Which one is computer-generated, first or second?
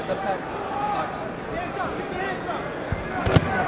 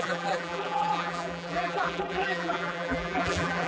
second